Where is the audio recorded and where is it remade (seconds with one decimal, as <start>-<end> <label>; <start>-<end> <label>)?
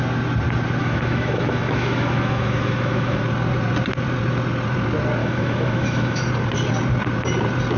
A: 0.0-0.8 recorded; 0.8-3.2 remade; 3.2-5.2 recorded; 5.2-6.2 remade; 6.2-7.8 recorded